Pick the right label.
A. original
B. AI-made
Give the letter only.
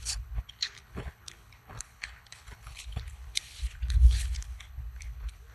B